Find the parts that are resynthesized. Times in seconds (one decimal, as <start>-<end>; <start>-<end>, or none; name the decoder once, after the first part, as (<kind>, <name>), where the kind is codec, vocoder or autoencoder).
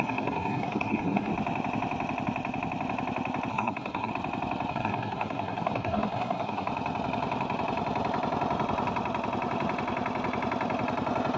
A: 0.0-1.3 (codec, SNAC); 3.5-4.1; 4.7-6.7